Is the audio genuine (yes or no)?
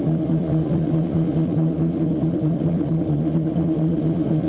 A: no